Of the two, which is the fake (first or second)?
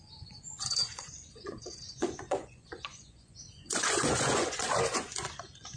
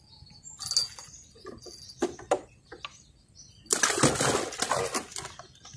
first